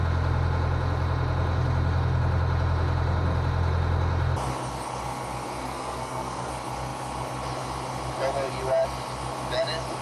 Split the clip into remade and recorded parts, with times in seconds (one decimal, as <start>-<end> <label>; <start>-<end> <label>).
0.0-5.6 recorded; 5.6-6.5 remade; 6.5-10.0 recorded